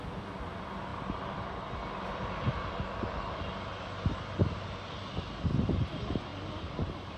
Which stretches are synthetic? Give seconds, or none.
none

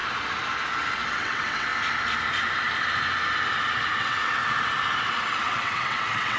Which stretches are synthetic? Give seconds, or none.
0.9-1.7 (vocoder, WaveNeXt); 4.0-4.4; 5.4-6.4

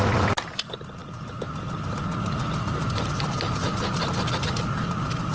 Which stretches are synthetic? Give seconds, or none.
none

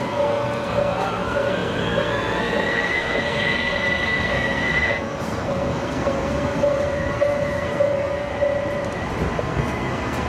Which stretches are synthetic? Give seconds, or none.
0.0-8.3 (codec, SNAC); 9.4-10.3

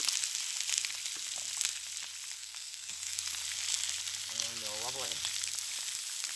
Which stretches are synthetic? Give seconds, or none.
2.4-3.2 (codec, SNAC)

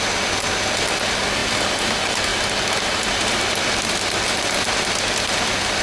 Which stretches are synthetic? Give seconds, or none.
none

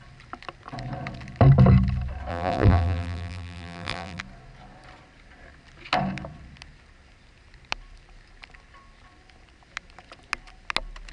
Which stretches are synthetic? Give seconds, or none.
2.3-4.2 (vocoder, BigVGAN v2)